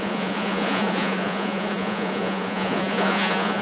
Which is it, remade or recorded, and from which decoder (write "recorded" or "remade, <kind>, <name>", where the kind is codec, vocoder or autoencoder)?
remade, vocoder, Vocos